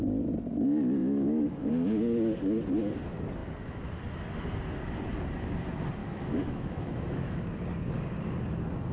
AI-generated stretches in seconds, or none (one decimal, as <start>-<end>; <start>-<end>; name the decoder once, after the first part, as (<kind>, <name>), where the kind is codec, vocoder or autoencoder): 1.0-1.7 (autoencoder, DAC-VAE); 6.0-7.5